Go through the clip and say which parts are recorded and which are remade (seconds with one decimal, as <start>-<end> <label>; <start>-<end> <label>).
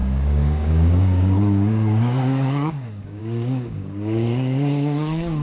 0.0-5.4 remade